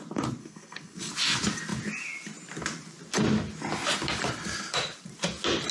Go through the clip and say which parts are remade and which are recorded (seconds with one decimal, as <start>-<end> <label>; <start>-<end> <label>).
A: 0.0-0.4 recorded; 0.4-1.1 remade; 1.1-5.7 recorded